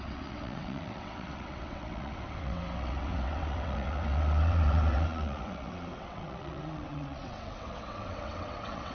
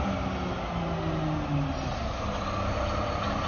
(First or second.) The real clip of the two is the second